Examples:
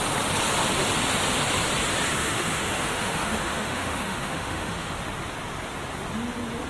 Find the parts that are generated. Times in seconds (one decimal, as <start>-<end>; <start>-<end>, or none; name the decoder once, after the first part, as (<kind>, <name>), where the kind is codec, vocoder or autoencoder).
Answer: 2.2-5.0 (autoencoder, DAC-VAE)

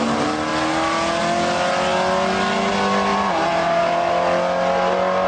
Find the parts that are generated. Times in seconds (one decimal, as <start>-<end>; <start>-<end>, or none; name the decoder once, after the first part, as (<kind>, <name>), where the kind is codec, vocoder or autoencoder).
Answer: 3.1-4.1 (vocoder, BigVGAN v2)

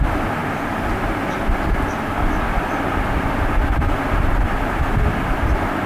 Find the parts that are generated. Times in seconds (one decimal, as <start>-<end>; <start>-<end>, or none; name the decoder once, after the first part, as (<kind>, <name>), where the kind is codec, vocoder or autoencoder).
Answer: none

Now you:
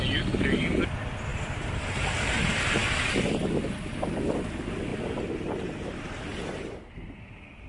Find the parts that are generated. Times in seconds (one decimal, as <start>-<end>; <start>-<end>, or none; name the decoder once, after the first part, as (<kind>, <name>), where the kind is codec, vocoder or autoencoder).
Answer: 1.3-3.1 (vocoder, BigVGAN v2); 4.9-7.1

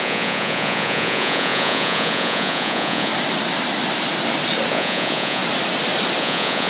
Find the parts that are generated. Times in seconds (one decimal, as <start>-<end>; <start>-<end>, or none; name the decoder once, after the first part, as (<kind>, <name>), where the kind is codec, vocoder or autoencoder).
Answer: 0.0-3.1 (vocoder, Vocos); 4.7-5.4; 6.2-6.7

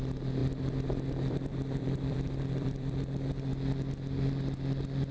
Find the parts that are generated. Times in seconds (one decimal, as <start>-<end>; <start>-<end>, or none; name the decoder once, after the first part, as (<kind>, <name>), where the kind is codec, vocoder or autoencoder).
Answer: 0.4-2.9 (vocoder, BigVGAN v2)